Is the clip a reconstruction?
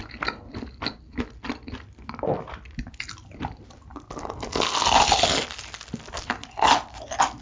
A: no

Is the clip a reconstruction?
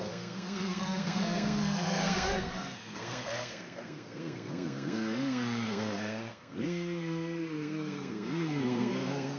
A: yes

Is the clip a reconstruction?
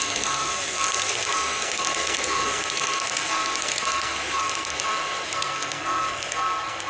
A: yes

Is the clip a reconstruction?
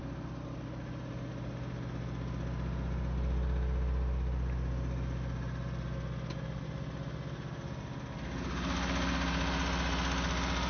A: no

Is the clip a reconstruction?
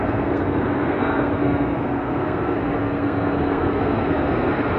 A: yes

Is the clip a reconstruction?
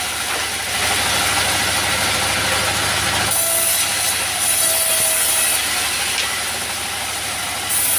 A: no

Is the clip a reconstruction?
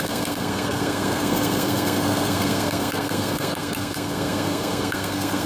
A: yes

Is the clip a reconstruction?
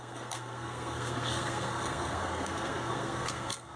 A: yes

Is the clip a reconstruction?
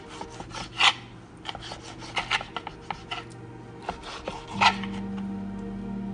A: no